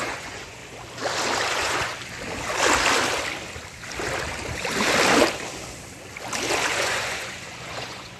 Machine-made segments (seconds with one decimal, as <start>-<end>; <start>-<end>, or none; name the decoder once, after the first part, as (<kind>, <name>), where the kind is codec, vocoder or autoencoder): 0.0-0.6 (vocoder, Vocos); 1.5-1.9; 6.7-8.2